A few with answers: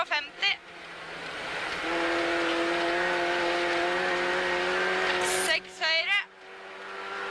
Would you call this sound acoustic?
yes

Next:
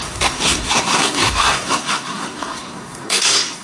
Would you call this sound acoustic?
no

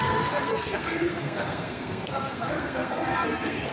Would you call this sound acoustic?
no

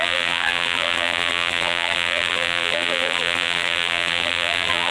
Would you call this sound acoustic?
no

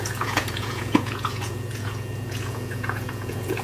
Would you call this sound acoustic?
no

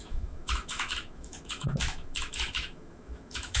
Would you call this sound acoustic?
no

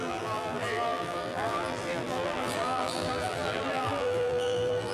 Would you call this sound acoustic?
no